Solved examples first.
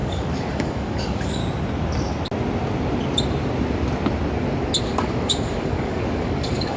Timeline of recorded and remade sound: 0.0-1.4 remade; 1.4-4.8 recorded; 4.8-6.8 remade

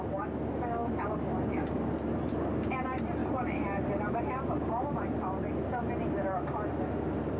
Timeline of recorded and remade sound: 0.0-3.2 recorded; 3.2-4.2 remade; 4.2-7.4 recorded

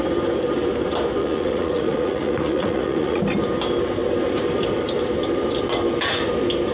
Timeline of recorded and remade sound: 0.0-1.2 recorded; 1.2-3.2 remade; 3.2-6.7 recorded

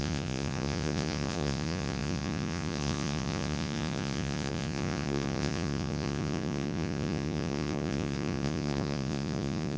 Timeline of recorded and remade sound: 0.0-9.8 remade